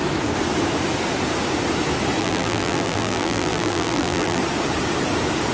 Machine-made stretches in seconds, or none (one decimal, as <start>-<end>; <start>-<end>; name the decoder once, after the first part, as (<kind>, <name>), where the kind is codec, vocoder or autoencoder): 2.2-4.4 (vocoder, BigVGAN v2)